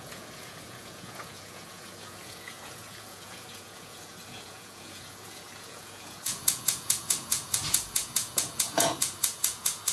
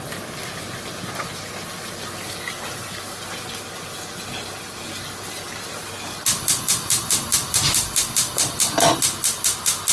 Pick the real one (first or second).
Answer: second